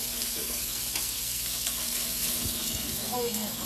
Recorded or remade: remade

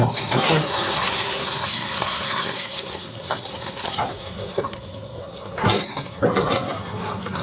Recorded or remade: remade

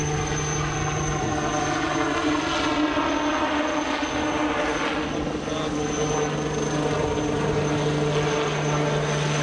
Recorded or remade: recorded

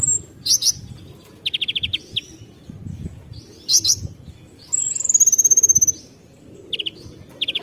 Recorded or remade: recorded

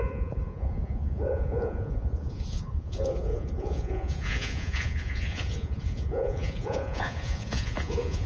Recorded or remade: remade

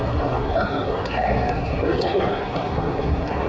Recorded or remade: remade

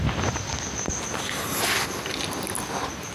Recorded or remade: recorded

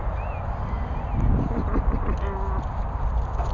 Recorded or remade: recorded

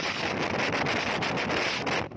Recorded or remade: recorded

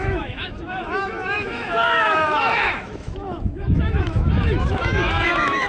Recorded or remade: remade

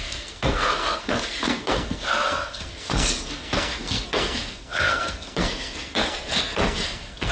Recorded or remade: remade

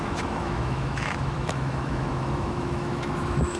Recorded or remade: remade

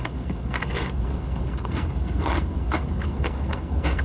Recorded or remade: remade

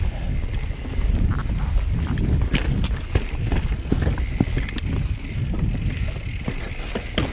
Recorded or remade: recorded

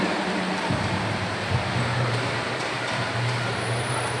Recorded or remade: remade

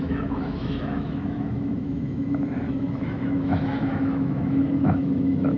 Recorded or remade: remade